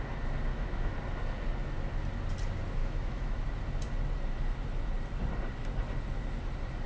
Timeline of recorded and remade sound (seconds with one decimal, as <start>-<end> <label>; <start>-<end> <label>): 0.0-0.5 recorded; 0.5-1.0 remade; 1.0-2.8 recorded; 2.8-3.4 remade; 3.4-6.9 recorded